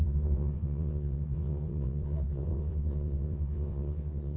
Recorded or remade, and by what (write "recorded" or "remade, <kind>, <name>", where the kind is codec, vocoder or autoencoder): remade, vocoder, WaveNeXt